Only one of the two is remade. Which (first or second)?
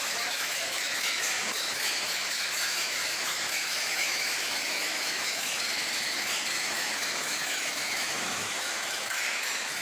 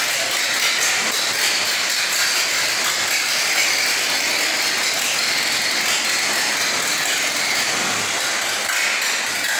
first